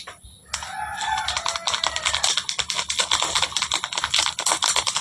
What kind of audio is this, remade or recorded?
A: recorded